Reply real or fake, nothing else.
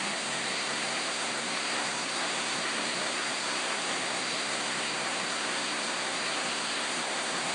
fake